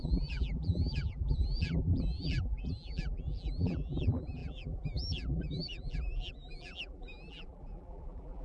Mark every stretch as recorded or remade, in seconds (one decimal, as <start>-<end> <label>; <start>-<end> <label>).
0.0-8.4 remade